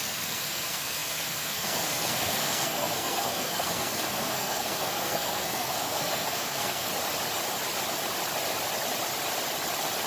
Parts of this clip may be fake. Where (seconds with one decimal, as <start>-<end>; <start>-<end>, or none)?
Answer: 0.0-6.9